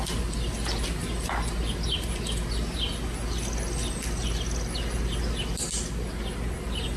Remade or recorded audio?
recorded